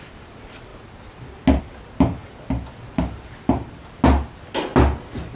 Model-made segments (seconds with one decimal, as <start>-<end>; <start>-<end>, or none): none